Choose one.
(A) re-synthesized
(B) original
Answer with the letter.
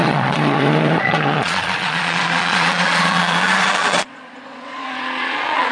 A